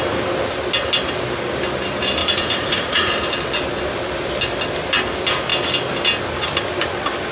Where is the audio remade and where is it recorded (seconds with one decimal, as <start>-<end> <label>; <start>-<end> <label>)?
0.0-2.2 recorded; 2.2-3.1 remade; 3.1-7.3 recorded